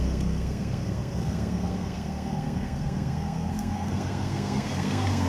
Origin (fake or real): fake